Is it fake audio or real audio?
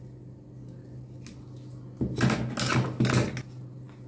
real